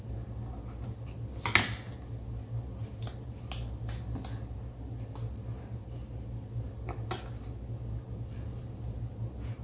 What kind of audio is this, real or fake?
real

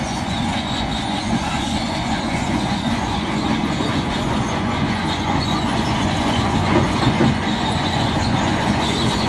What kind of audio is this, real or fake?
fake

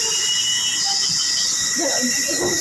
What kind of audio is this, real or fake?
real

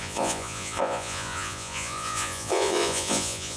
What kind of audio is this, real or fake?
fake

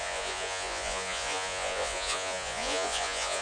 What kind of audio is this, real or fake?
fake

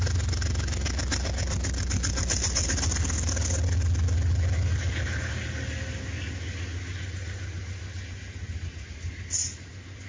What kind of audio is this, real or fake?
real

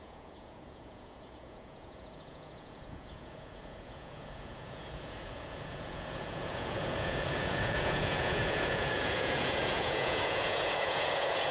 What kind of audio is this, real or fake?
fake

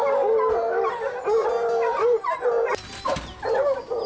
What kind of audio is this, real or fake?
real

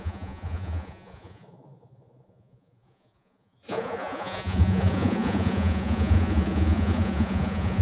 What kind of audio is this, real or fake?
fake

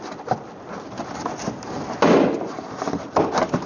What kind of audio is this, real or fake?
real